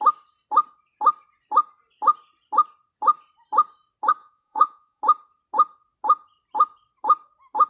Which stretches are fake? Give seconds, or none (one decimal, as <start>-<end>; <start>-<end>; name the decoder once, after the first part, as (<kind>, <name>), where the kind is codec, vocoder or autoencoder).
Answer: 4.2-5.0 (vocoder, Vocos)